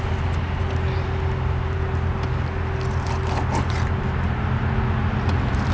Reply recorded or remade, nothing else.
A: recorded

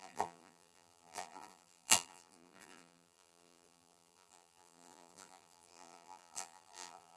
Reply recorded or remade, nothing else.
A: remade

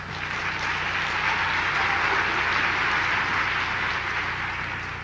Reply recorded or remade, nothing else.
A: recorded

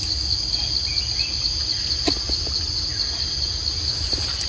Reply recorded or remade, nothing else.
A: recorded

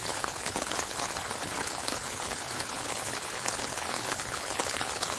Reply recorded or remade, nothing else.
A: remade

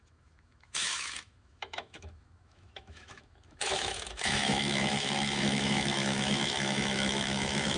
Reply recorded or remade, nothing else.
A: remade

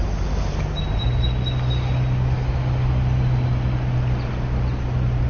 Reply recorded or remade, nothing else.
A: recorded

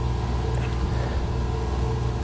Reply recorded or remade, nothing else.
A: recorded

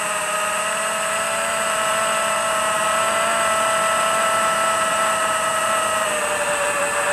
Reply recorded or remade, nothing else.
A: remade